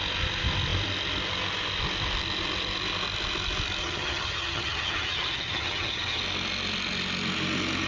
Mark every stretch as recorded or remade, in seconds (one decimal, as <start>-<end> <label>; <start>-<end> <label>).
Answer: 0.0-3.8 recorded; 3.8-6.2 remade; 6.2-7.9 recorded